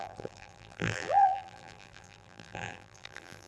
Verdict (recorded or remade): remade